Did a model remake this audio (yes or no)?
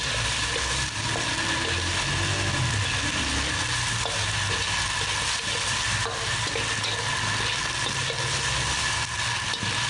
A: no